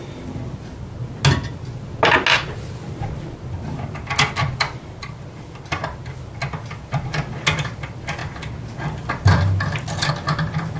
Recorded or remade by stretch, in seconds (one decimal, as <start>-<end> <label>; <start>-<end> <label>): 0.0-10.8 recorded